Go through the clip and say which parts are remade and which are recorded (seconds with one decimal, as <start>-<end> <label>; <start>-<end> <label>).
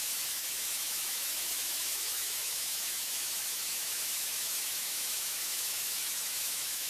0.0-6.9 remade